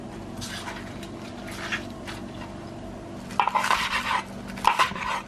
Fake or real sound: real